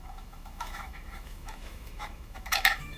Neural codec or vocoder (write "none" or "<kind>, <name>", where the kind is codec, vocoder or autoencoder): autoencoder, DAC-VAE